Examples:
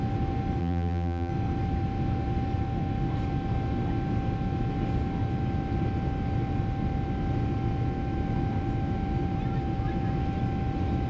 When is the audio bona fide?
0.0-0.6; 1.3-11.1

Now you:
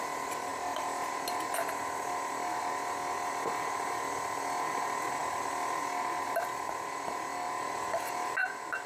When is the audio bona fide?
0.0-8.9

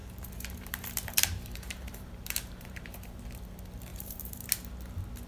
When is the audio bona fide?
3.2-3.9; 4.5-5.3

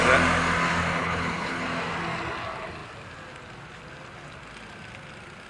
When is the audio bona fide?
0.0-1.0; 1.6-5.5